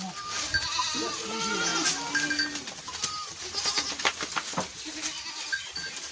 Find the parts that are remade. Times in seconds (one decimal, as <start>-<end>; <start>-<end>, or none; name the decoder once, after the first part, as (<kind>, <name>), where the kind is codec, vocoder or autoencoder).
none

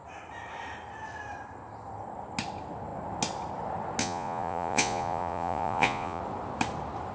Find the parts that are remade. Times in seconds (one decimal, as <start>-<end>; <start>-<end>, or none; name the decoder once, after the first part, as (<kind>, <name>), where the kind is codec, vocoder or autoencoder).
4.0-6.2 (vocoder, Vocos)